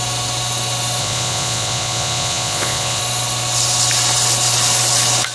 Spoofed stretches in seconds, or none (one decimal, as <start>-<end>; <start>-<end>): 1.0-3.0